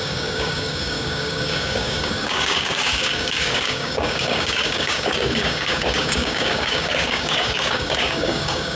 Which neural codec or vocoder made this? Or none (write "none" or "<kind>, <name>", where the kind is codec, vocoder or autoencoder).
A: codec, DAC